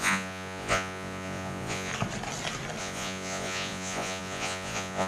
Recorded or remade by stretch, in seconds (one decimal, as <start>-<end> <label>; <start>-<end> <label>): 0.0-1.9 remade; 1.9-2.8 recorded; 2.8-5.1 remade